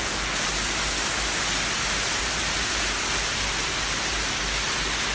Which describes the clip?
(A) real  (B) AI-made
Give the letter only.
A